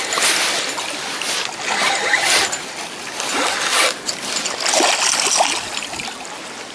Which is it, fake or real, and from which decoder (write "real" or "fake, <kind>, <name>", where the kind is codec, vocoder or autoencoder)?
real